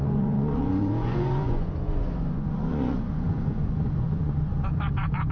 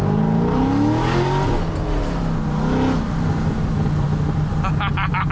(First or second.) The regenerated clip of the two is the first